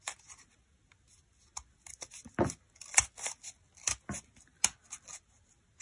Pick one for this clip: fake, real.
real